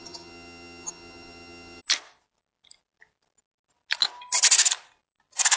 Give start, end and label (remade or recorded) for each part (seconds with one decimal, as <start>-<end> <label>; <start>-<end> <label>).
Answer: 0.0-1.8 remade; 1.8-5.6 recorded